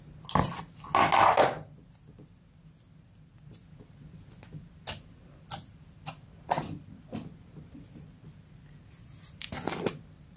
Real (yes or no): yes